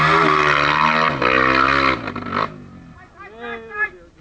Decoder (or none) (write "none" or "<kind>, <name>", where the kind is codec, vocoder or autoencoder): none